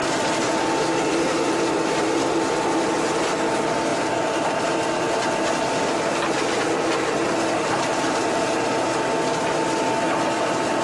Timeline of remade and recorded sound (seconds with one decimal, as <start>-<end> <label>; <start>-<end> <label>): 0.0-3.9 recorded; 3.9-5.0 remade; 5.0-10.8 recorded